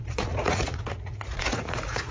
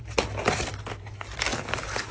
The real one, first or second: second